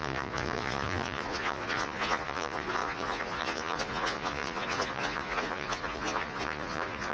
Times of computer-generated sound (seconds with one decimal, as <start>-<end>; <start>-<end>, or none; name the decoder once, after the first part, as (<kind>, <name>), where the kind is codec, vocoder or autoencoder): 0.0-7.1 (vocoder, Vocos)